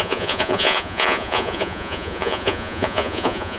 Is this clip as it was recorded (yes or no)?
no